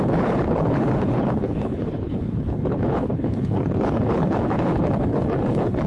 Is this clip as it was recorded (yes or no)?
no